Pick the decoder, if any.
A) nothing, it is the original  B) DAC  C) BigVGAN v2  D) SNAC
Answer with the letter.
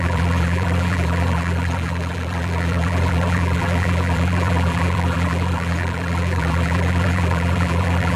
C